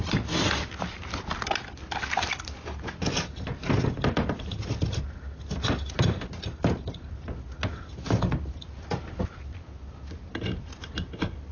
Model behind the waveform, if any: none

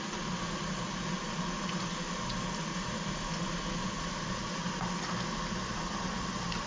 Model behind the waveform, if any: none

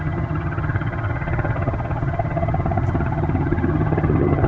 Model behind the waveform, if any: vocoder, HiFi-GAN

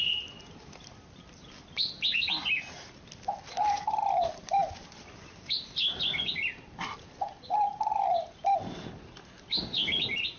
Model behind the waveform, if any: none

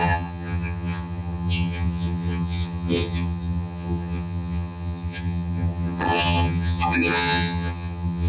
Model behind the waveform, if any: vocoder, HiFi-GAN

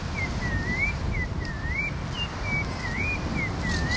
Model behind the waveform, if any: none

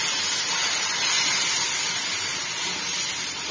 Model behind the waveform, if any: none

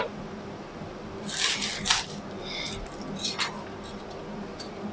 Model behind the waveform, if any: none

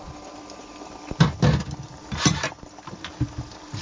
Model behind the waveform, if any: none